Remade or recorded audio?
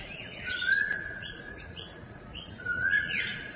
remade